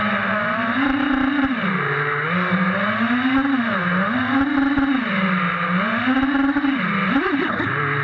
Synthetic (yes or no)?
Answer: no